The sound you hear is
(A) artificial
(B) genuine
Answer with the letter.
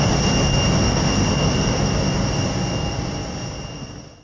B